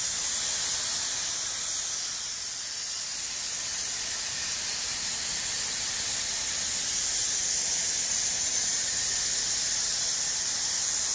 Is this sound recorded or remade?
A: recorded